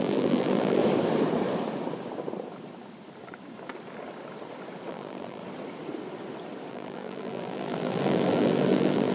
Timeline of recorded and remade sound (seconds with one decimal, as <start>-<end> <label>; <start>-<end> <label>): 0.0-0.8 remade; 0.8-4.9 recorded; 4.9-5.4 remade; 5.4-6.7 recorded; 6.7-9.1 remade